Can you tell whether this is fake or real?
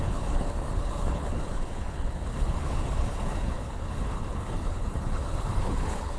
fake